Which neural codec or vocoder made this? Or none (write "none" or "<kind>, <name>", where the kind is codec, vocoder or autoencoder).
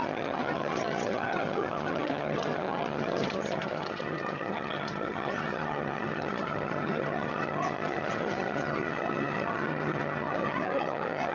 vocoder, HiFi-GAN